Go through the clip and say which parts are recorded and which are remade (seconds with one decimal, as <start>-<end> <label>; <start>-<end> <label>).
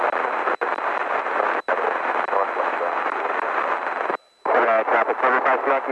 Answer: 0.0-1.0 recorded; 1.0-1.9 remade; 1.9-2.4 recorded; 2.4-4.1 remade; 4.1-5.9 recorded